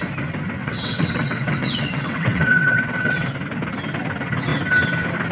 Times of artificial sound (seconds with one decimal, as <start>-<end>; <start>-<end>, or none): 0.6-3.3